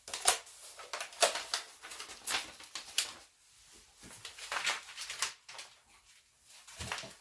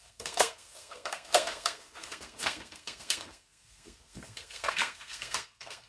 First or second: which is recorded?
first